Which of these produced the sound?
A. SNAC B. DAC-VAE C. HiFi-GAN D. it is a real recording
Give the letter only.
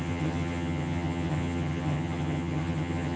C